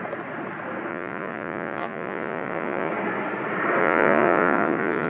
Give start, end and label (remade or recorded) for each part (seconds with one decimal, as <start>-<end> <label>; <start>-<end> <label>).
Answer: 0.0-0.9 recorded; 0.9-2.9 remade; 2.9-3.8 recorded; 3.8-5.1 remade